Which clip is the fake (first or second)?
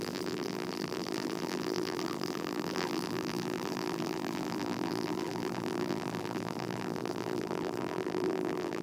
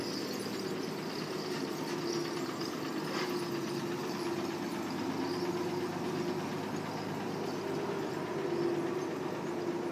first